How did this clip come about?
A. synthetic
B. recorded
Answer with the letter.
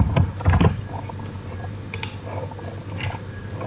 B